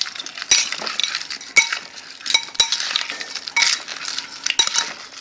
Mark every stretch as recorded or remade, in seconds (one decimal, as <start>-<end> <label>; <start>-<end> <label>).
0.0-5.2 recorded